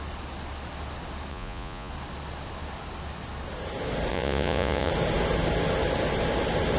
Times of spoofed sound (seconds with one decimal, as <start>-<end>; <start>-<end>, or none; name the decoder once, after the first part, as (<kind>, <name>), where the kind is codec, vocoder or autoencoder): 1.3-1.9 (vocoder, Vocos); 4.1-4.9